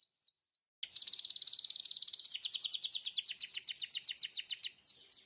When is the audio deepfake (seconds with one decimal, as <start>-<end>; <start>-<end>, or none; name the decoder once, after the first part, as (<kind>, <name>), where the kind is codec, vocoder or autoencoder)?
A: none